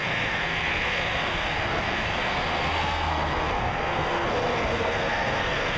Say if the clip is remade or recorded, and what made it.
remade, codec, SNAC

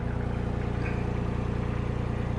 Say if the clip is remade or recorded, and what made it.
recorded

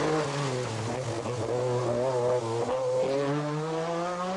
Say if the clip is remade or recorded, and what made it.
recorded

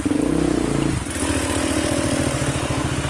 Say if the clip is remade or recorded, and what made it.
recorded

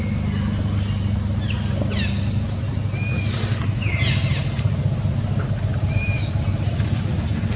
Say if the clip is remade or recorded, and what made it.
recorded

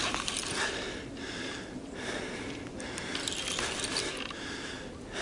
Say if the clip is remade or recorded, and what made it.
recorded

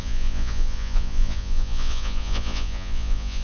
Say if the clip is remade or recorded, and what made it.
remade, vocoder, Vocos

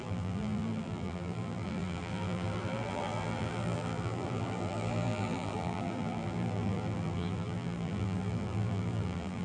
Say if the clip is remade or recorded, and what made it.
remade, vocoder, BigVGAN v2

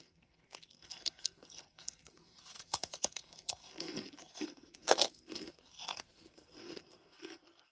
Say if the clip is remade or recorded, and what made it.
remade, codec, SNAC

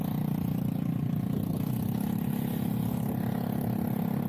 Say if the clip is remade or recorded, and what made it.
recorded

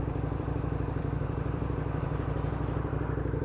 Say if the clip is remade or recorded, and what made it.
remade, vocoder, BigVGAN v2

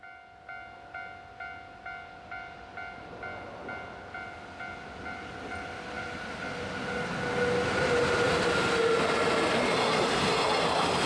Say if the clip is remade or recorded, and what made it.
recorded